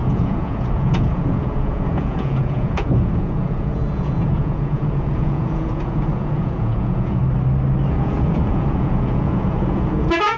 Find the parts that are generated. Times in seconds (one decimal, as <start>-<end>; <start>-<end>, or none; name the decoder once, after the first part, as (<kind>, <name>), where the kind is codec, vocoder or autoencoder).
0.0-7.2 (vocoder, Vocos); 7.9-10.4